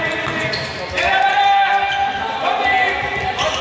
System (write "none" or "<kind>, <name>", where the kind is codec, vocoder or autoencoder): none